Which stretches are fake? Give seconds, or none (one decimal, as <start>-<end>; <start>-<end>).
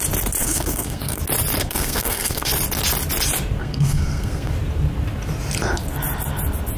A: 0.4-1.2; 1.6-2.5; 3.6-4.5